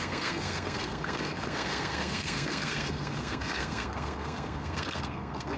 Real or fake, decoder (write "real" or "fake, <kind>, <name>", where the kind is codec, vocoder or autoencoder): fake, codec, SNAC